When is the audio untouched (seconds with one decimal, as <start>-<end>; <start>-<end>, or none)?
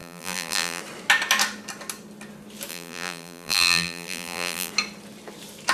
0.8-2.7; 4.7-5.7